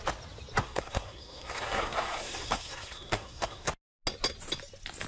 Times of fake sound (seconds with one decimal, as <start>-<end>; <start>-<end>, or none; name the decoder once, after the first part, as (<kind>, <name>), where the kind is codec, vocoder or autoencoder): 0.6-3.7 (codec, SNAC)

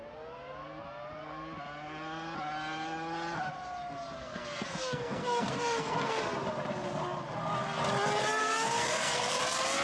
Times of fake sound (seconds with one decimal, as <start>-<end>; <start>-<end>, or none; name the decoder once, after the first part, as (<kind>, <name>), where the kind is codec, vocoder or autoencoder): 4.2-6.2 (codec, SNAC); 8.4-9.4

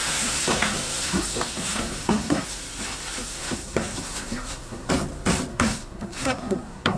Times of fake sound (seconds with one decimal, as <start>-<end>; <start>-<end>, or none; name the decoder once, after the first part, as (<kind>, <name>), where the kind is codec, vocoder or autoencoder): 0.0-2.6 (codec, SNAC); 3.2-4.9; 5.5-7.0

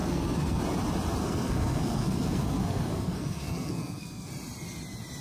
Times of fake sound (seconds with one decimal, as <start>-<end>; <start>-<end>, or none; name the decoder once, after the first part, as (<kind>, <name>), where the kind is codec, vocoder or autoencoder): 0.0-0.6 (codec, SNAC); 1.2-4.3